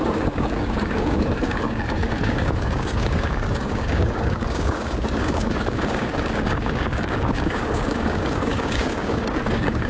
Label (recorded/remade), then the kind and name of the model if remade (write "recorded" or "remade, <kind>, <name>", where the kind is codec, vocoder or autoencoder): remade, codec, DAC